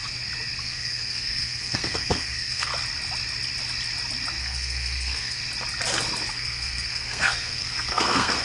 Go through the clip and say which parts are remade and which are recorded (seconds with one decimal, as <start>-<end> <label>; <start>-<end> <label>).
0.0-0.6 recorded; 0.6-2.7 remade; 2.7-4.4 recorded; 4.4-5.4 remade; 5.4-6.3 recorded; 6.3-8.4 remade